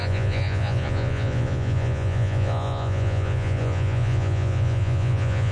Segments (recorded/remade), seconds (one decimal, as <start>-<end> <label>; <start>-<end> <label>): 0.0-5.5 remade